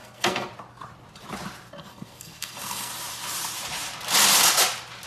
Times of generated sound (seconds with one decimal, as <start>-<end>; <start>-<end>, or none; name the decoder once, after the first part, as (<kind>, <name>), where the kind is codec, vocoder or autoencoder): 0.0-0.5 (codec, SNAC); 1.8-2.9